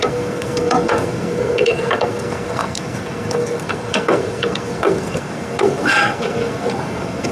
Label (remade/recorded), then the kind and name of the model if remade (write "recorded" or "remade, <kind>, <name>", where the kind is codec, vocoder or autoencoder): remade, codec, SNAC